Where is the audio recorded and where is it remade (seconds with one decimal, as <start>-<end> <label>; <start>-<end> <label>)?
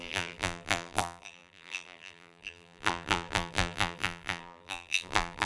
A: 0.0-5.5 remade